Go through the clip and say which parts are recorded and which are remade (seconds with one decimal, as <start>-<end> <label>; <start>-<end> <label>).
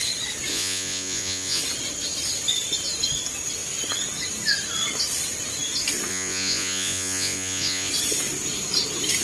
0.0-0.5 recorded; 0.5-1.6 remade; 1.6-6.1 recorded; 6.1-7.9 remade; 7.9-9.2 recorded